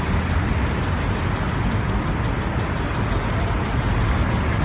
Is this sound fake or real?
real